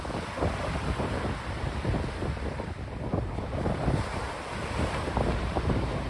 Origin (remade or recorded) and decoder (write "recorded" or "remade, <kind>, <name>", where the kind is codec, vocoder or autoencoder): recorded